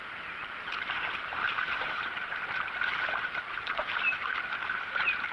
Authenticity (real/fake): fake